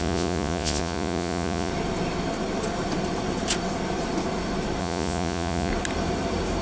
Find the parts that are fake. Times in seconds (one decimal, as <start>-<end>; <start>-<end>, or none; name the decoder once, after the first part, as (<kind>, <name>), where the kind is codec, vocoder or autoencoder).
0.0-1.7 (vocoder, Vocos); 4.8-5.7